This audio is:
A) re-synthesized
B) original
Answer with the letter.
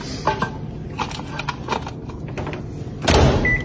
B